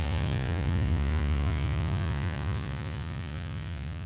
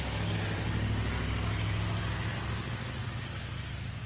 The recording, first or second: second